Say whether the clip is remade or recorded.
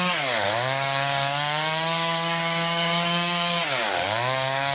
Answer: remade